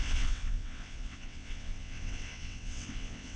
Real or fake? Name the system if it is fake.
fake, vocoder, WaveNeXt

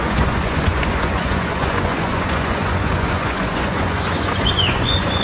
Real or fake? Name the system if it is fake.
fake, vocoder, Vocos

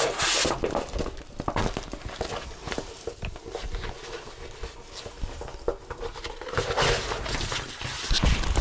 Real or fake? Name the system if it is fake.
real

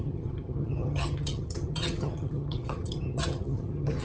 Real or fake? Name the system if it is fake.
fake, vocoder, HiFi-GAN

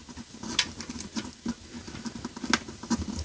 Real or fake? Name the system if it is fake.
real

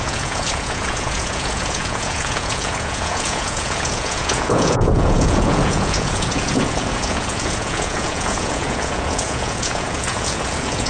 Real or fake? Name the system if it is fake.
fake, vocoder, Vocos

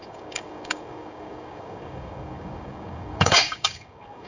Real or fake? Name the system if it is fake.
fake, codec, DAC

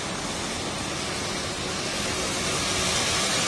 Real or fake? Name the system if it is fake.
real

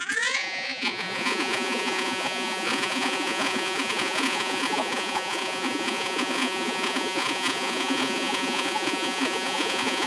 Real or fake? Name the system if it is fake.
fake, vocoder, Vocos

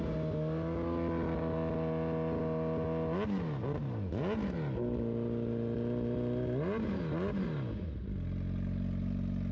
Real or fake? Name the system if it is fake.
real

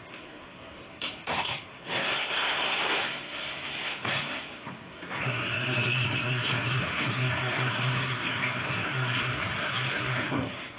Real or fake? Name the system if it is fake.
fake, codec, SNAC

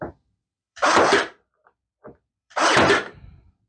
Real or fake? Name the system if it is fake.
fake, vocoder, BigVGAN v2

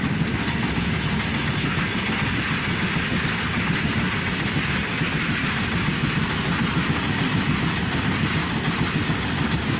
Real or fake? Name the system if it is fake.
real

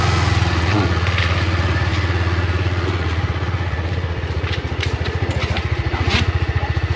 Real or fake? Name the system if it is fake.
fake, vocoder, Vocos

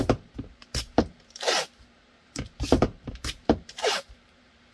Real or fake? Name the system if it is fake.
fake, vocoder, BigVGAN v2